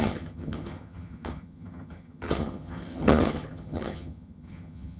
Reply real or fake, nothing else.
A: fake